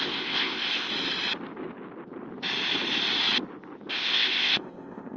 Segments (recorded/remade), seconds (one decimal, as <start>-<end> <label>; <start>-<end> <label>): 0.0-0.9 remade; 0.9-3.9 recorded; 3.9-5.2 remade